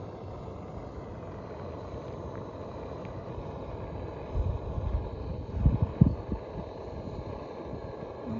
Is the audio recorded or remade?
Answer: recorded